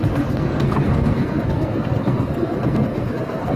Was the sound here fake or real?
fake